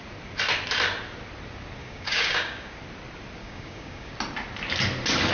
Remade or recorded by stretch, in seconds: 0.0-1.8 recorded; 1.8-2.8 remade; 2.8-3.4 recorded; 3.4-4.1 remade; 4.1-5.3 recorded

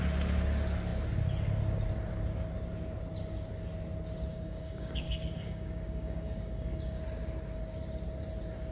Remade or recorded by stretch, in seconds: 0.0-4.3 recorded; 4.3-7.0 remade; 7.0-8.7 recorded

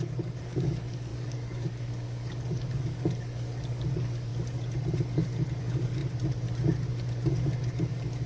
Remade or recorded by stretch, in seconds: 0.0-4.3 remade; 4.3-5.6 recorded; 5.6-6.0 remade; 6.0-7.9 recorded; 7.9-8.3 remade

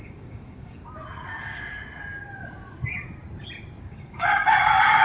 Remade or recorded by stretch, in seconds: 0.0-0.8 remade; 0.8-3.8 recorded; 3.8-5.0 remade

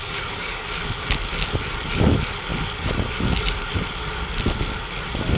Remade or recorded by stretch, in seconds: 0.0-0.6 remade; 0.6-5.4 recorded

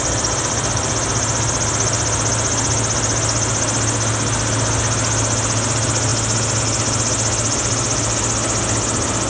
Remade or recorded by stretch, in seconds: 0.0-9.3 recorded

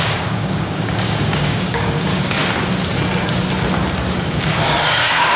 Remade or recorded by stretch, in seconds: 0.0-2.4 remade; 2.4-4.2 recorded; 4.2-5.4 remade